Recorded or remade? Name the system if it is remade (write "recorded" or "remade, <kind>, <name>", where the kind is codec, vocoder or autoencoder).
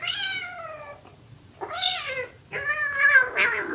recorded